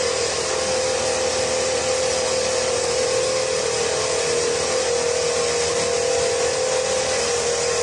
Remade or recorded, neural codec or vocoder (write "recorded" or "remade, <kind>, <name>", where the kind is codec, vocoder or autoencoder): recorded